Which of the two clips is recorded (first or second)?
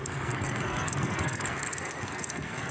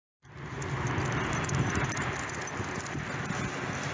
second